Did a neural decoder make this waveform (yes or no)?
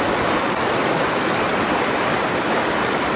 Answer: no